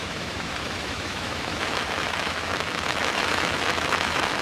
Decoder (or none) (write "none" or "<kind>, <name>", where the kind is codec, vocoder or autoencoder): autoencoder, DAC-VAE